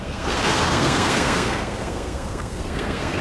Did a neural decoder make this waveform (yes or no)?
yes